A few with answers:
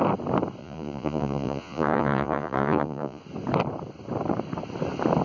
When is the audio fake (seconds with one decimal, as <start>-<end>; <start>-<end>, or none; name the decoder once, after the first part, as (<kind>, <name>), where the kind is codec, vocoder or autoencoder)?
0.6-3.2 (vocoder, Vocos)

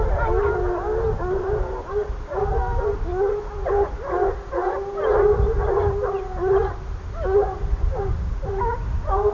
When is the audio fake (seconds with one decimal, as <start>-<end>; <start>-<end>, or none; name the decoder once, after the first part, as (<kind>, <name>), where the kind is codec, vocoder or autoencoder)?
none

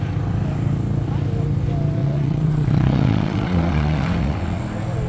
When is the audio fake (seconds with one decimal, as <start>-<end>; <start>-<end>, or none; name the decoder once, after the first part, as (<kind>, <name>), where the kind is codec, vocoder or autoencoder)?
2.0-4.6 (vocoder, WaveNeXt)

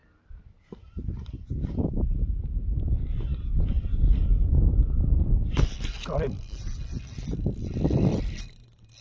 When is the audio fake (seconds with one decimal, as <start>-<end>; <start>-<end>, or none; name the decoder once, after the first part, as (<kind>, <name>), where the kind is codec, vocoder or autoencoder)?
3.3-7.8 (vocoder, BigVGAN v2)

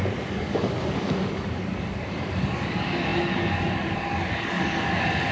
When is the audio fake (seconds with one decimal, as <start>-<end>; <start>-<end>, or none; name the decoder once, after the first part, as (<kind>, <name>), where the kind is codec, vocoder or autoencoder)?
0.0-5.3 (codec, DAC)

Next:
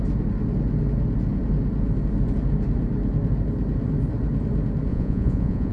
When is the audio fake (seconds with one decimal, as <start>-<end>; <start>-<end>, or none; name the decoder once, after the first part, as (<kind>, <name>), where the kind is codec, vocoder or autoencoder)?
4.9-5.7 (vocoder, Vocos)

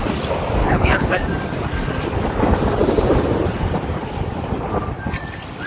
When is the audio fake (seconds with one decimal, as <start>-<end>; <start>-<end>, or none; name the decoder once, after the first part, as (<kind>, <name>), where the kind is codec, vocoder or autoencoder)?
0.6-1.2 (codec, HILCodec)

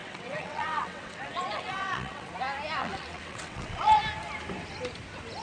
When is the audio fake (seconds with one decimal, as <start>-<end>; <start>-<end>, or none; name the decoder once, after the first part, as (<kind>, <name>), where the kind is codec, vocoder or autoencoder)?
0.0-2.3 (vocoder, WaveNeXt); 2.8-4.0